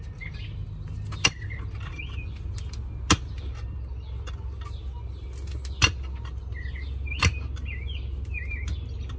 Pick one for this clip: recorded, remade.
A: recorded